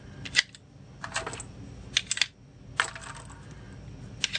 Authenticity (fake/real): real